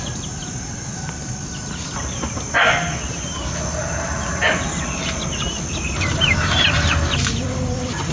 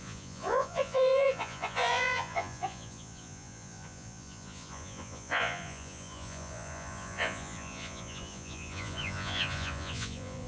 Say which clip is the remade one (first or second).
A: second